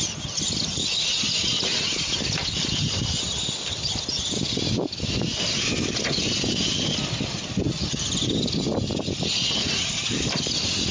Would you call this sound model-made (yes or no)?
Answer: no